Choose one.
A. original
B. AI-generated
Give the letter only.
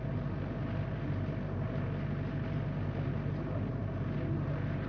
A